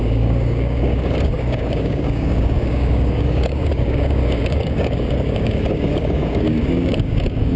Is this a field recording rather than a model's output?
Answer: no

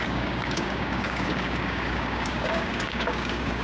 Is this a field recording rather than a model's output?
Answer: no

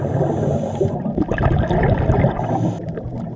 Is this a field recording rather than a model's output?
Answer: yes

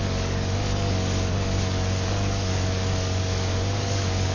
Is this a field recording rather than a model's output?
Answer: no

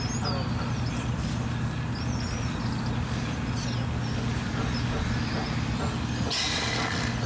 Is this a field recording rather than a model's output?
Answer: yes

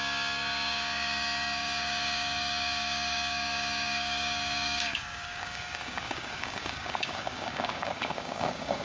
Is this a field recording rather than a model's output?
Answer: no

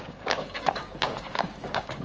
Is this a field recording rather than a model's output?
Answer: no